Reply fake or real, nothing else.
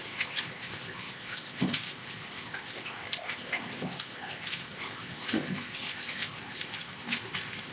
fake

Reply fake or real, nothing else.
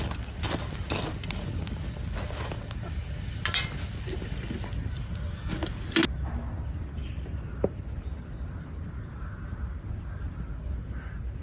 real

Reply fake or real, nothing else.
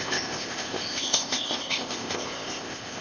fake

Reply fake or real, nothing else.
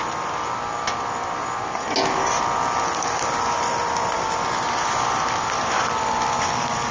real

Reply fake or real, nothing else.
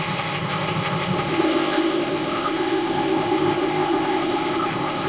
fake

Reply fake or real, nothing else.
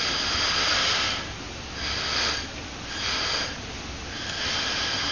real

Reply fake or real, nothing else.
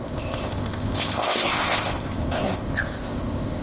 fake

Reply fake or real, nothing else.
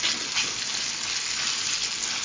real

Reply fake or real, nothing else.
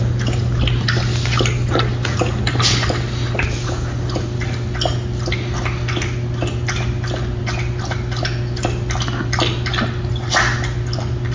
real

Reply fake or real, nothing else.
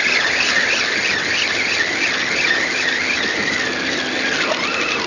real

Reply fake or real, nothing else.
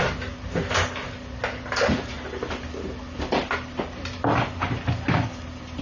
real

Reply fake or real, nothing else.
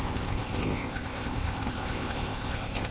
fake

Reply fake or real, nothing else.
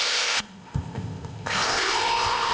fake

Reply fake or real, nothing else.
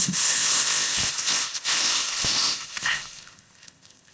fake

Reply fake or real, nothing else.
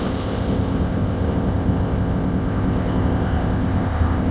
fake